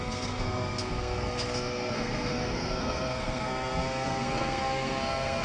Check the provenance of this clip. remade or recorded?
remade